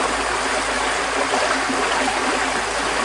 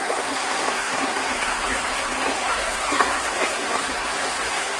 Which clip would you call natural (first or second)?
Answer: first